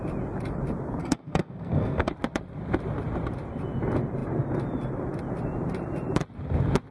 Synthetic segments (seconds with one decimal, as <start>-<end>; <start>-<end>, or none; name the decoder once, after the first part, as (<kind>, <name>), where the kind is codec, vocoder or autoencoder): 1.0-2.1 (codec, SNAC)